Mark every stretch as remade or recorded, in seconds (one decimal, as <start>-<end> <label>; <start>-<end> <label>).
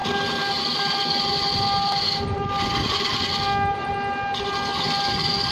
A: 0.0-5.5 recorded